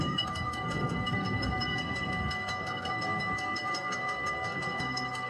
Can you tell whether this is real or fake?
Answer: fake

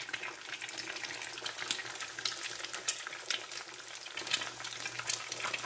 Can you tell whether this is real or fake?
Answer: real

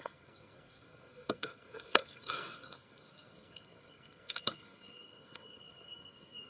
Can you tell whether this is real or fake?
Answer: fake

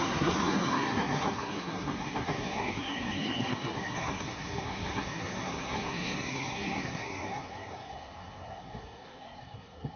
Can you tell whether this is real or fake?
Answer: fake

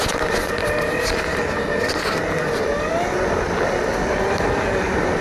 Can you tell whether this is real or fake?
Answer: real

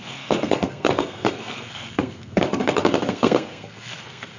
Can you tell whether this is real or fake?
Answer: fake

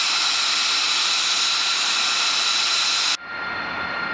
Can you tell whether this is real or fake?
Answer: real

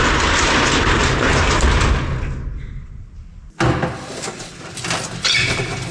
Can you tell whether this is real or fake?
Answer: real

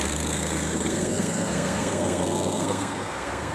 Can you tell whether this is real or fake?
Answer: fake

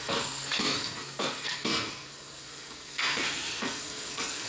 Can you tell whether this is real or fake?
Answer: fake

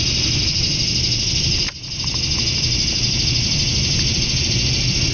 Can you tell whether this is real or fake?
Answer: real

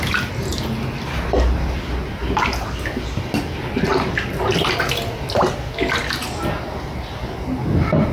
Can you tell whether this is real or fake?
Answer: real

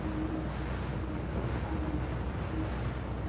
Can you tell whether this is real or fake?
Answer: real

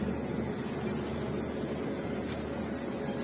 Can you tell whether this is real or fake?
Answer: real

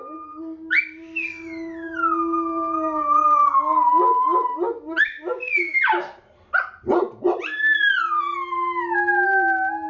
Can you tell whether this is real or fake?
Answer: real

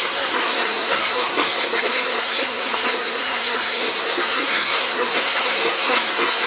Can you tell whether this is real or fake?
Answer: fake